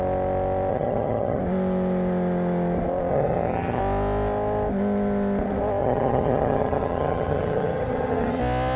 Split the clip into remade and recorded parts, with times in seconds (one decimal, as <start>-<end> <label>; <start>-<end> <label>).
0.0-0.7 recorded; 0.7-1.4 remade; 1.4-3.1 recorded; 3.1-3.8 remade; 3.8-5.8 recorded; 5.8-8.4 remade; 8.4-8.8 recorded